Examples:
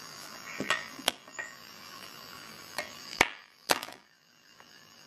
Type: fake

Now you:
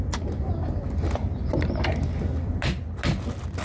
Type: real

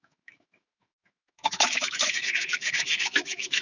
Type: fake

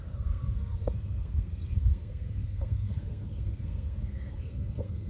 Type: fake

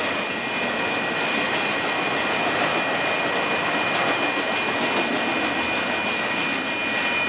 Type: real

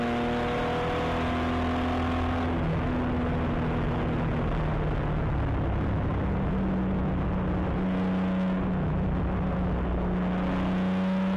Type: real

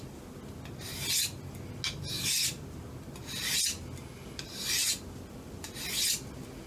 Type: real